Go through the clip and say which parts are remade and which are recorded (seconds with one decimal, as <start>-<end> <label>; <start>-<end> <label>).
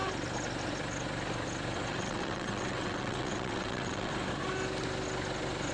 0.0-1.9 recorded; 1.9-4.1 remade; 4.1-5.7 recorded